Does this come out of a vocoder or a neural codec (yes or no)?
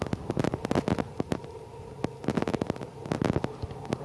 no